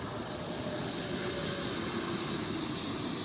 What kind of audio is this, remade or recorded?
recorded